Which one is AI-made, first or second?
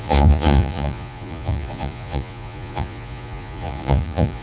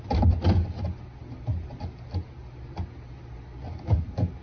first